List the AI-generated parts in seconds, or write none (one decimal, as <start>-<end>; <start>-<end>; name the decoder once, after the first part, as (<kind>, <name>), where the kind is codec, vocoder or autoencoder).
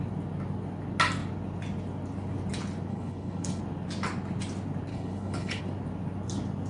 2.9-3.6 (codec, HILCodec); 4.9-5.6